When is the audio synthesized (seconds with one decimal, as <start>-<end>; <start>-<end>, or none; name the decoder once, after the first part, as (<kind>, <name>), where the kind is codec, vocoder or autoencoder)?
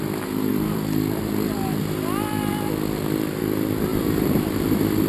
0.5-1.8 (vocoder, BigVGAN v2); 3.9-5.1